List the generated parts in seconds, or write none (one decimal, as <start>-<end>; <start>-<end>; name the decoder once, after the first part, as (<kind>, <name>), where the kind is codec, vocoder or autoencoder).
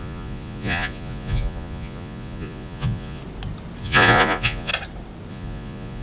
0.0-3.2 (vocoder, Vocos); 3.8-4.7; 5.3-6.0